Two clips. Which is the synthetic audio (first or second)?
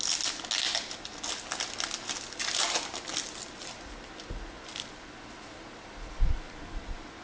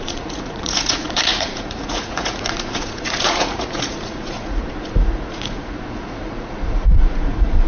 second